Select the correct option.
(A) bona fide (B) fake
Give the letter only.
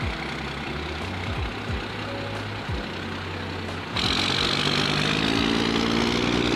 A